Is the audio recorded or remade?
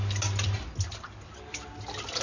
recorded